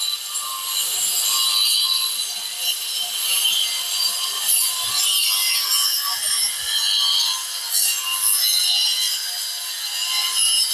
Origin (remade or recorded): recorded